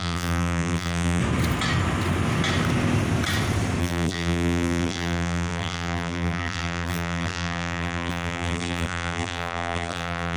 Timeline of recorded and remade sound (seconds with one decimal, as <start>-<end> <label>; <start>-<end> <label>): 0.0-1.2 remade; 1.2-3.8 recorded; 3.8-10.4 remade

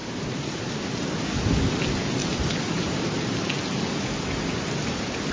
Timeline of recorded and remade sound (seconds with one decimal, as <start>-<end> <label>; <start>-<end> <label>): 0.0-0.7 remade; 0.7-2.2 recorded; 2.2-3.4 remade; 3.4-5.3 recorded

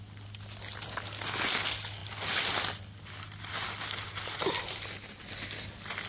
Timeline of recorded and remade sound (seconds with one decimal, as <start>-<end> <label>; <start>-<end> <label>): 0.0-6.1 recorded

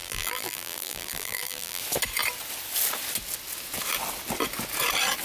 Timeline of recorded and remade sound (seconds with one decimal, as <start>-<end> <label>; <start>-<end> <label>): 0.0-1.8 remade; 1.8-5.2 recorded

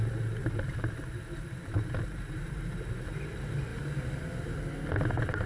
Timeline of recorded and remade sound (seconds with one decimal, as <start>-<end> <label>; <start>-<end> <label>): 0.0-3.7 remade; 3.7-5.1 recorded; 5.1-5.5 remade

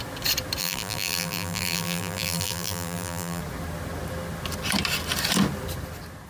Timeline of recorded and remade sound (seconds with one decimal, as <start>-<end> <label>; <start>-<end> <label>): 0.0-0.6 recorded; 0.6-3.4 remade; 3.4-6.3 recorded

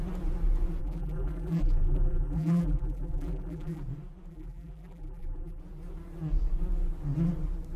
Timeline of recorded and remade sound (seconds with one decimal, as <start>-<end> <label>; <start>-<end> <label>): 0.0-0.8 recorded; 0.8-3.8 remade; 3.8-4.3 recorded; 4.3-5.6 remade; 5.6-7.8 recorded

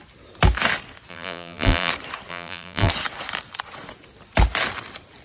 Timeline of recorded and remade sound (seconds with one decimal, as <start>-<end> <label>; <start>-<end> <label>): 0.0-1.1 recorded; 1.1-1.9 remade; 1.9-2.3 recorded; 2.3-2.9 remade; 2.9-5.2 recorded